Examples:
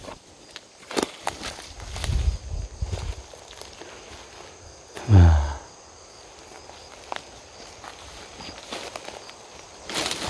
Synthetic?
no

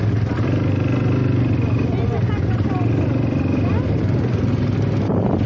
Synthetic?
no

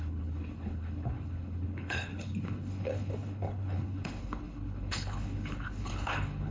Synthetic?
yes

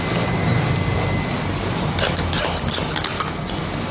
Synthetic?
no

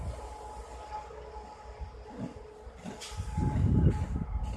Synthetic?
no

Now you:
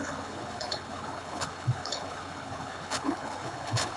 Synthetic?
yes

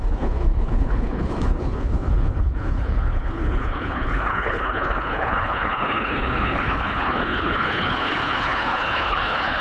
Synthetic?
yes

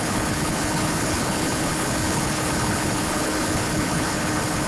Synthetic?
yes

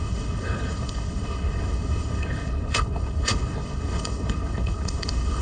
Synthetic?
yes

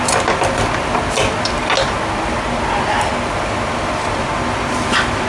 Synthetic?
no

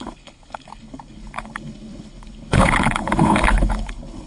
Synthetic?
yes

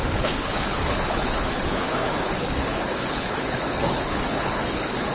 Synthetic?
yes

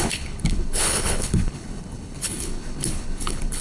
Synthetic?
yes